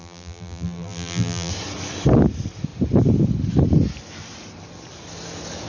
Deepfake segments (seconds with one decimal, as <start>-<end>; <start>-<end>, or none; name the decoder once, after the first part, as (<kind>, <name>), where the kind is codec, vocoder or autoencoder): 0.0-1.5 (vocoder, BigVGAN v2)